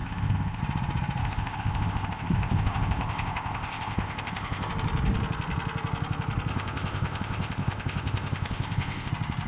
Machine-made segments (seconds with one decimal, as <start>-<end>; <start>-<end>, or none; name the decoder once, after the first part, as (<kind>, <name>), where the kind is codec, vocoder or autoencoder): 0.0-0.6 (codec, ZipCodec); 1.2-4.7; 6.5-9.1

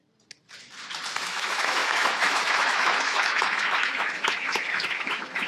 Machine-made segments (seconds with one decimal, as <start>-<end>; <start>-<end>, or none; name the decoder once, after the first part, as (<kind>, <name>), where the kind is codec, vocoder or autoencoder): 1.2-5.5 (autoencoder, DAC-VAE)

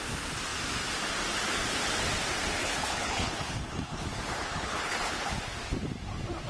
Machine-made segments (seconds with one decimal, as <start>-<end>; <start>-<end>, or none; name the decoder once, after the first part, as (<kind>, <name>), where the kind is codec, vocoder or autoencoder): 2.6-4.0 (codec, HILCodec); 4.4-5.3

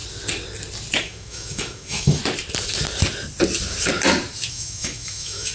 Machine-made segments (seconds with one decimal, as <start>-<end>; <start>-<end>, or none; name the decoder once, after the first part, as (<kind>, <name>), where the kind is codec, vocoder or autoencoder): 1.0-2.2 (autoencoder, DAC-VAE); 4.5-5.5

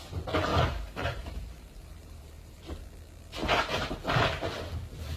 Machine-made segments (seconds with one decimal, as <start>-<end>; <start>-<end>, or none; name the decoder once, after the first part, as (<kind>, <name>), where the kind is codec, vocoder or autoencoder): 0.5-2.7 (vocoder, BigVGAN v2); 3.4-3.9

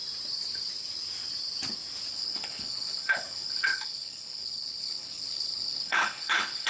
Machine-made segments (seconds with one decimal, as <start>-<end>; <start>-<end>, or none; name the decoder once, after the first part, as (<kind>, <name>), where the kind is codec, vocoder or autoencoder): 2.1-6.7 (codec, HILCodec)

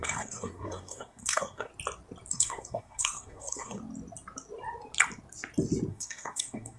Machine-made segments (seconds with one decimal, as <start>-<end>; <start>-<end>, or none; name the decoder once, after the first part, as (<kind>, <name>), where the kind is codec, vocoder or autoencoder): 0.0-1.7 (codec, SNAC); 2.3-3.8; 5.9-6.8